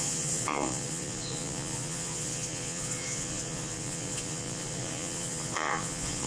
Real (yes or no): no